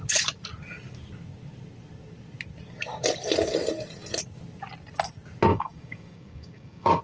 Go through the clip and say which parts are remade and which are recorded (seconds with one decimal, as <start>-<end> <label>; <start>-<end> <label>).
0.0-5.5 recorded; 5.5-7.0 remade